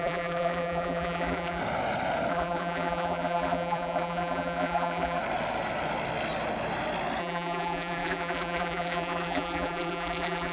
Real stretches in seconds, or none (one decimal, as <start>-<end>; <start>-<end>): 1.6-2.3; 5.2-7.2